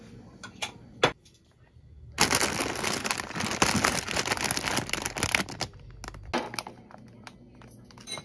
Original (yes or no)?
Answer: yes